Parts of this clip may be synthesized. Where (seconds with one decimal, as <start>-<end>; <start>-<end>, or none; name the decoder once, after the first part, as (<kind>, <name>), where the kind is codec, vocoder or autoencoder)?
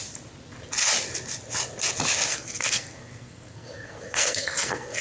2.3-5.0 (codec, SNAC)